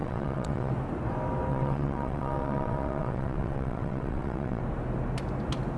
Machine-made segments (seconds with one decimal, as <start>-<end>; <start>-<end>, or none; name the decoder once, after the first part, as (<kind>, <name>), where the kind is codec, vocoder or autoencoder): 0.0-0.7 (vocoder, WaveNeXt); 1.5-4.6